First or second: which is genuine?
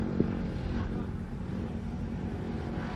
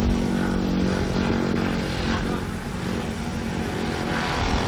second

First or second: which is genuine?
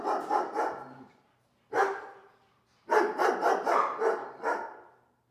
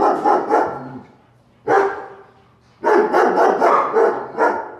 second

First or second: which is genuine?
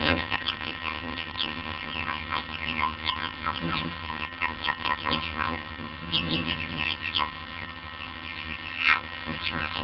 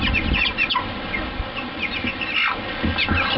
second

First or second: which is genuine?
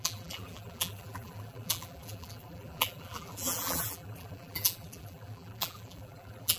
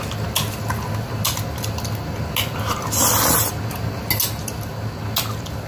second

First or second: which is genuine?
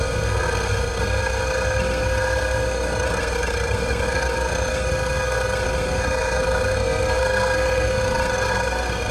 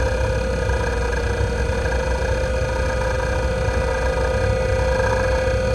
second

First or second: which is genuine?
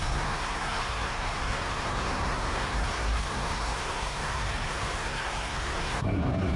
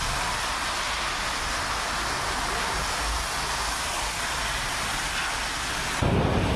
second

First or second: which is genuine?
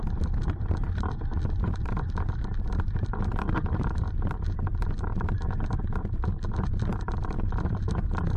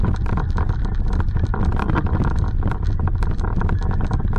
second